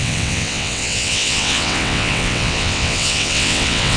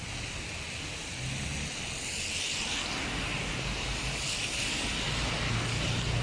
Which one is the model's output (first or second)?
first